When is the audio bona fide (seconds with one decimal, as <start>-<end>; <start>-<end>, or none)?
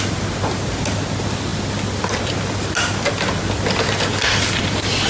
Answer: 0.0-5.1